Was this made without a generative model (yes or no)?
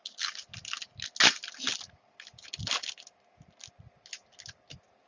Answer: yes